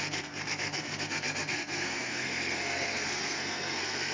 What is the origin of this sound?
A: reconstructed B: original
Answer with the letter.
A